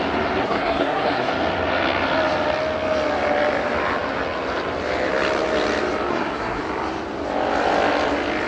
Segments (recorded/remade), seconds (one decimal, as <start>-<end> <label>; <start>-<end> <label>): 0.0-0.4 recorded; 0.4-1.3 remade; 1.3-6.1 recorded; 6.1-6.6 remade; 6.6-8.5 recorded